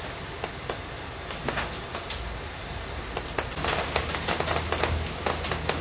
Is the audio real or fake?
real